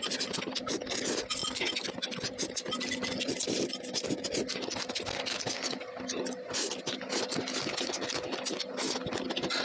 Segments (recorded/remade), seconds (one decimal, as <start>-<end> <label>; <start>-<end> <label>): 0.0-9.6 recorded